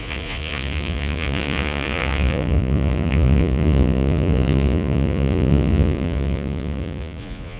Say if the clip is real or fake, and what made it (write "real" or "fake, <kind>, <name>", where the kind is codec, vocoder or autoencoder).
fake, vocoder, Vocos